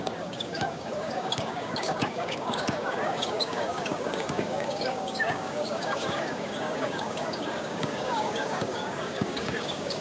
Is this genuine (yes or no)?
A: no